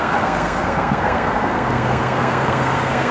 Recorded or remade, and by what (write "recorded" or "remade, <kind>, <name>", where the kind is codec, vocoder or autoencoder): remade, codec, SNAC